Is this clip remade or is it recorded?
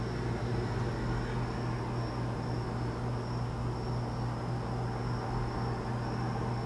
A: recorded